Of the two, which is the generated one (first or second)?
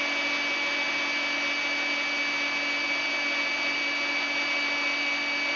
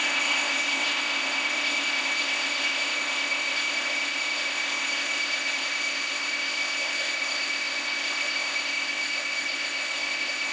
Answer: second